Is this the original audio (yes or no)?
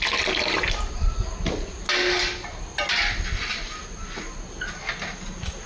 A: yes